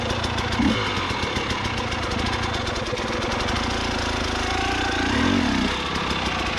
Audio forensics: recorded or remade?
recorded